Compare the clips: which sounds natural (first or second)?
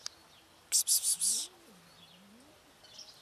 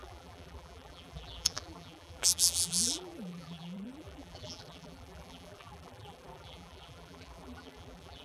first